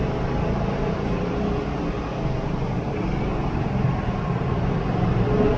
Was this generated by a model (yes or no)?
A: no